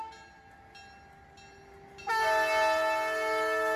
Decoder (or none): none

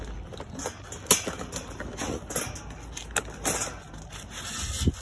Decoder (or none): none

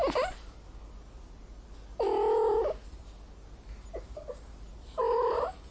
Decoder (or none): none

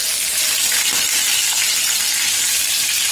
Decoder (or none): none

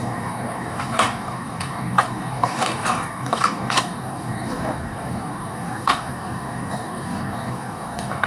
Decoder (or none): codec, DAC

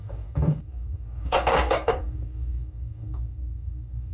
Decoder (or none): codec, DAC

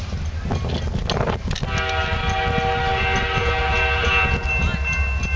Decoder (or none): none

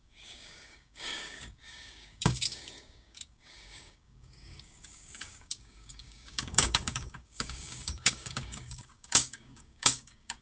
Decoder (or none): codec, DAC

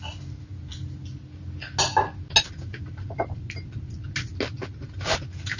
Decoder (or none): none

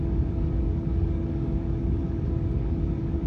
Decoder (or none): codec, DAC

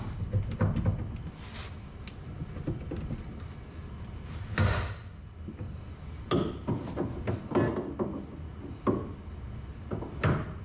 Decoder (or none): none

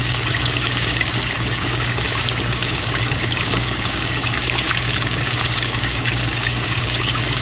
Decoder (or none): codec, DAC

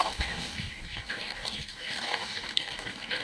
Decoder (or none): codec, DAC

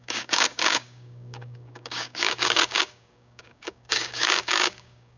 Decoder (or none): codec, DAC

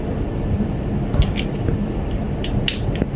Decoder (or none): none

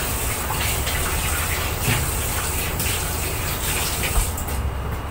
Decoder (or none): none